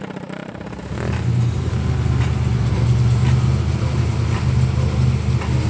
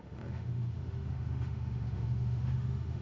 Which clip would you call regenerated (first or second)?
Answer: second